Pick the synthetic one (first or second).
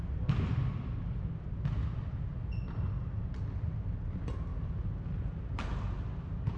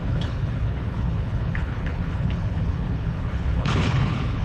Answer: second